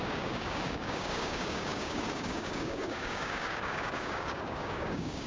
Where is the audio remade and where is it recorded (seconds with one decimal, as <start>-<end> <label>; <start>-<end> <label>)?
0.0-5.3 remade